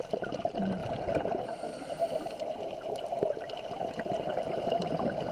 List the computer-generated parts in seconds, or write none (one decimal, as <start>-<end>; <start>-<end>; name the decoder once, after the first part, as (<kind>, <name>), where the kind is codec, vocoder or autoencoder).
0.8-3.9 (vocoder, BigVGAN v2)